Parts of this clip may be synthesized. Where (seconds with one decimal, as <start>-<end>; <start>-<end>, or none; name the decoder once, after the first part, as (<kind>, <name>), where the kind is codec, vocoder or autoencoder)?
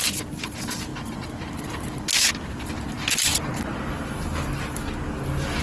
none